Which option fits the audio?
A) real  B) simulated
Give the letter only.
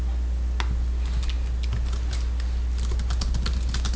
A